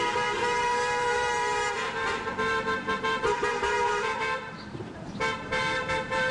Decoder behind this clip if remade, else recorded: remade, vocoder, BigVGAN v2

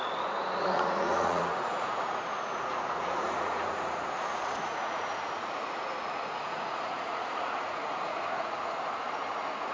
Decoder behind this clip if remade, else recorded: remade, vocoder, Vocos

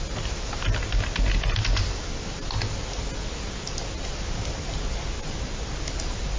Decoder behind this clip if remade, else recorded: recorded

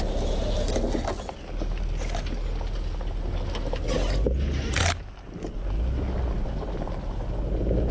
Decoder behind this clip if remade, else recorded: recorded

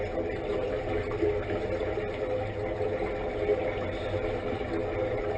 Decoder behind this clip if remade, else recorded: recorded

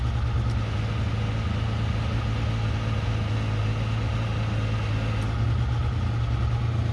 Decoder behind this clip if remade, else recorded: recorded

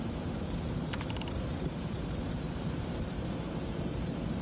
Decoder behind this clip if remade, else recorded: remade, vocoder, BigVGAN v2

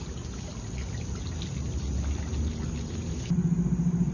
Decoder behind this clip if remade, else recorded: recorded